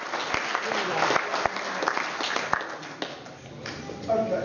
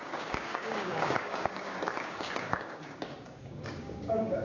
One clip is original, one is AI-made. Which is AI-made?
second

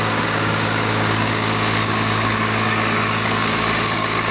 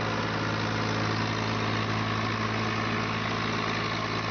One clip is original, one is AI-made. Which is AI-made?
first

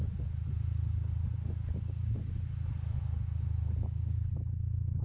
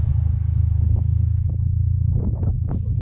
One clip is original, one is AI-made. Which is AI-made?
second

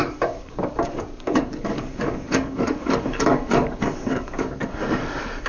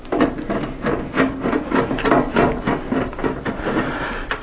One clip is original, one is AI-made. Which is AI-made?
first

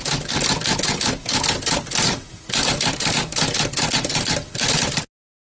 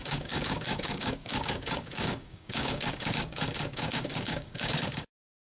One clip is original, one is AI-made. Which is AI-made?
second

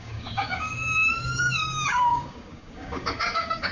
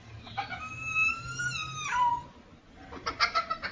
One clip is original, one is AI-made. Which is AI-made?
first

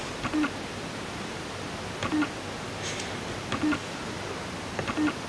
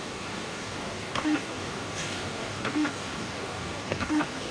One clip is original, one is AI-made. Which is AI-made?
second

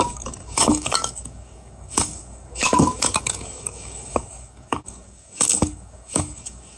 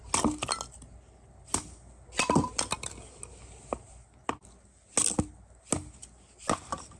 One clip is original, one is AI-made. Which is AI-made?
first